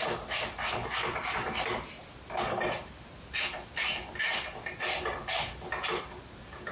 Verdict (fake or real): real